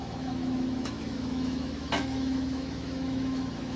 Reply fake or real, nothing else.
fake